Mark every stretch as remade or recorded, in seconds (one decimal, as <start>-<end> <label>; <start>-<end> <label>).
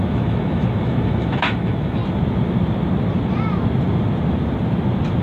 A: 0.0-2.0 remade; 2.0-5.2 recorded